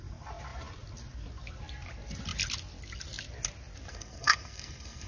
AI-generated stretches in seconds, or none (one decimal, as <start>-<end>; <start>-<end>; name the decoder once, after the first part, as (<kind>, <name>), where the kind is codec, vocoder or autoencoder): 3.9-5.1 (codec, SNAC)